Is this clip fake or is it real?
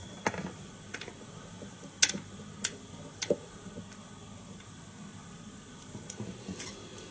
real